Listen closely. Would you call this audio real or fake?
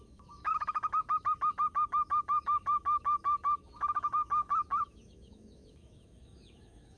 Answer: fake